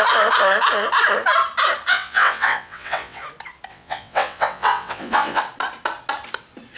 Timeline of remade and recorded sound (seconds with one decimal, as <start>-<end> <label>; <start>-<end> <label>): 0.0-1.9 recorded; 1.9-3.2 remade; 3.2-3.7 recorded; 3.7-5.4 remade; 5.4-6.8 recorded